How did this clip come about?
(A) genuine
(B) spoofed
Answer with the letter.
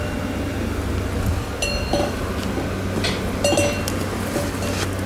A